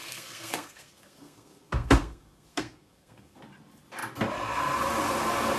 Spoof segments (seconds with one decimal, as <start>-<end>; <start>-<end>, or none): 0.0-3.4

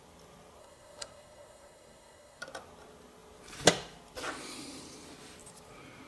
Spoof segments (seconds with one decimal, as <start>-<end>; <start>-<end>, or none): 0.6-2.4

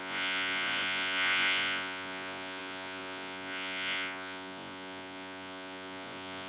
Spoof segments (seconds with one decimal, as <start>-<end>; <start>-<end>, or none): 0.0-6.5

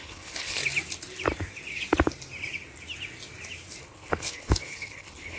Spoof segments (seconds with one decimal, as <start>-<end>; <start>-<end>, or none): 0.0-0.6; 3.8-5.4